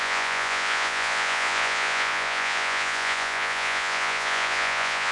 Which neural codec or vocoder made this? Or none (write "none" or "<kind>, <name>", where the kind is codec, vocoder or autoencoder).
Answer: vocoder, Vocos